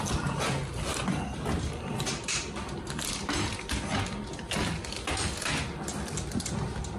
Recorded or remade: recorded